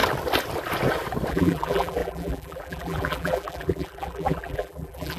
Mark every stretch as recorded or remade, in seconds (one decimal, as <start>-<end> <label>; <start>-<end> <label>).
0.0-1.3 recorded; 1.3-5.2 remade